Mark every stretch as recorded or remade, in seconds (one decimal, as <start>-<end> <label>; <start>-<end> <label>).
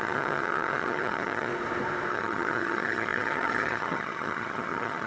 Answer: 0.0-1.5 remade; 1.5-2.1 recorded; 2.1-5.1 remade